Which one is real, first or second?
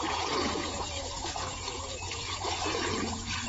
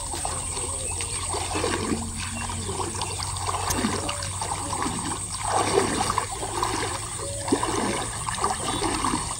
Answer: second